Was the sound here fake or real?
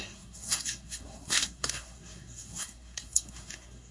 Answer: fake